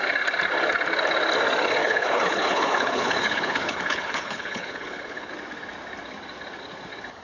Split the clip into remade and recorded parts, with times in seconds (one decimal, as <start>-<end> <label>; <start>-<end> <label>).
0.0-1.8 recorded; 1.8-5.3 remade; 5.3-7.2 recorded